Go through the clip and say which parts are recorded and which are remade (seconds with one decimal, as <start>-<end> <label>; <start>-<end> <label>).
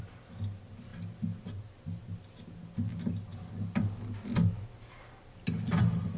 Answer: 0.0-6.2 recorded